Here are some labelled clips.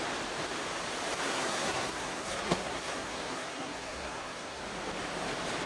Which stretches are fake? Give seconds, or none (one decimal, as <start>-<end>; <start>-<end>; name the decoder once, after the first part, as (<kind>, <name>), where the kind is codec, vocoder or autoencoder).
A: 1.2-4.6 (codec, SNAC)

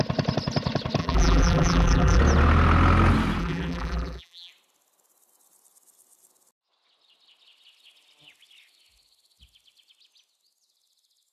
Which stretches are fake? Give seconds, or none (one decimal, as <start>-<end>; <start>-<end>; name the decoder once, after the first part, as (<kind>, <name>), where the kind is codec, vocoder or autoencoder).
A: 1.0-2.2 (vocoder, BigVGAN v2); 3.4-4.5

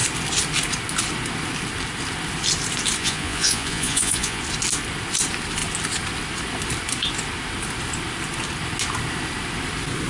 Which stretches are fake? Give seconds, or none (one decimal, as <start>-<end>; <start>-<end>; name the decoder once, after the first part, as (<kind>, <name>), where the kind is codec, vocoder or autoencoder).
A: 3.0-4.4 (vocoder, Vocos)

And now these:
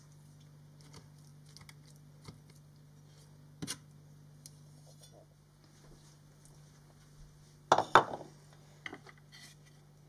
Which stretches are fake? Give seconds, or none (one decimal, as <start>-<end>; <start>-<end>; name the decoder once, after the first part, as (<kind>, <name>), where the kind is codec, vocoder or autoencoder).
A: none

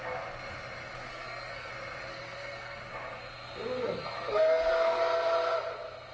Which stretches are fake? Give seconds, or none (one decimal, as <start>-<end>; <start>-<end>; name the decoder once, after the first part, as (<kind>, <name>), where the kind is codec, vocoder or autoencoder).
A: 1.1-1.7 (codec, SNAC); 2.1-2.8; 3.8-5.0